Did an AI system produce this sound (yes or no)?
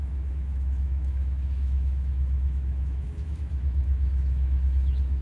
yes